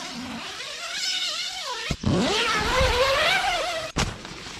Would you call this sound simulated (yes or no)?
no